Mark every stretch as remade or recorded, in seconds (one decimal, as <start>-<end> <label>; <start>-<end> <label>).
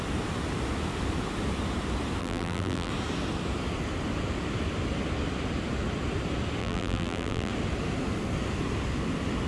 0.0-2.2 recorded; 2.2-2.9 remade; 2.9-6.6 recorded; 6.6-7.5 remade; 7.5-9.5 recorded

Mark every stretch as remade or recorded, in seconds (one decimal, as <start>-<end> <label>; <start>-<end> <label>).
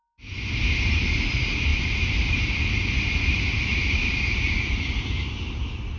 0.0-1.7 recorded; 1.7-2.6 remade; 2.6-3.7 recorded; 3.7-5.6 remade; 5.6-6.0 recorded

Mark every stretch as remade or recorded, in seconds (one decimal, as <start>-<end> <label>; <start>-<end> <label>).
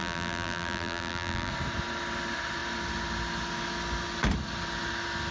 0.0-1.5 remade; 1.5-5.3 recorded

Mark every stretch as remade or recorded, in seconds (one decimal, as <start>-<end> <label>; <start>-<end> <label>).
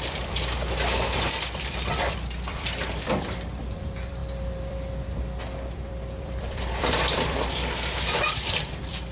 0.0-9.1 remade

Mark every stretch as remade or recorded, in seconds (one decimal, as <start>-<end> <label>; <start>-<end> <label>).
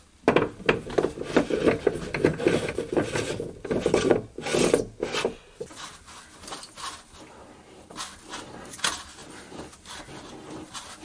0.0-9.2 recorded; 9.2-10.0 remade; 10.0-11.0 recorded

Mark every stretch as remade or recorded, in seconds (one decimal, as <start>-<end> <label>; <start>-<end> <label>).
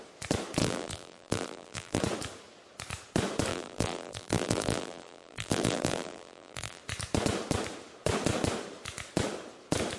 0.0-0.6 recorded; 0.6-2.0 remade; 2.0-3.5 recorded; 3.5-6.8 remade; 6.8-10.0 recorded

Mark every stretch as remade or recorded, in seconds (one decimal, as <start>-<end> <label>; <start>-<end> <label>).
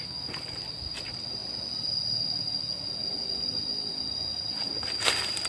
0.0-5.5 recorded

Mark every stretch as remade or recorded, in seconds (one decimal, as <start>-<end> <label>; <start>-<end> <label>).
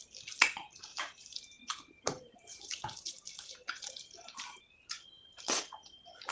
0.0-0.9 recorded; 0.9-4.6 remade; 4.6-6.3 recorded